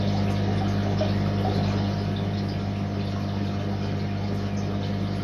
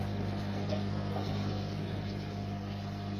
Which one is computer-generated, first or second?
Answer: second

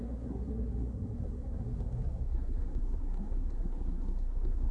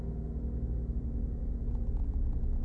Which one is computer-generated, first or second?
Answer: first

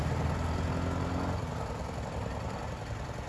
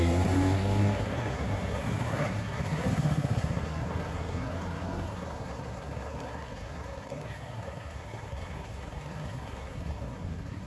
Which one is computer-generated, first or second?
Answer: second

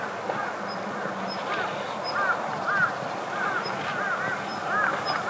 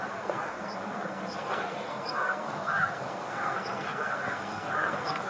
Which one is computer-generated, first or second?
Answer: second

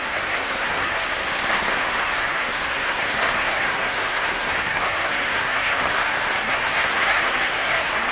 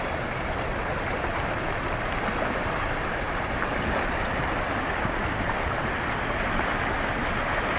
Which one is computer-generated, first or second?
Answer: first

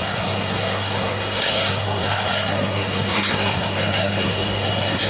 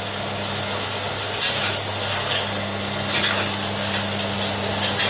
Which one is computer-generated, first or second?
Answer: first